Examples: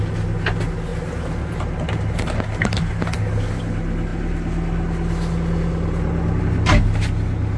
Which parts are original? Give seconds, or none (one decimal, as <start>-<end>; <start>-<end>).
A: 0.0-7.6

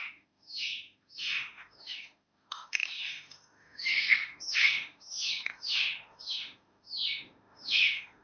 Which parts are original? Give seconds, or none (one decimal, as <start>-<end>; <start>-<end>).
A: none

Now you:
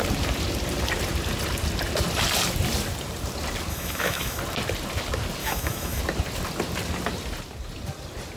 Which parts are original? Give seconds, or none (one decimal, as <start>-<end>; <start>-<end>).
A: 0.0-3.7; 4.4-5.4; 6.0-8.4

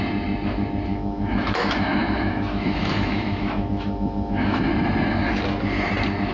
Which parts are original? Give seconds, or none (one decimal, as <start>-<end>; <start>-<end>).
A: 0.0-0.9; 4.7-6.3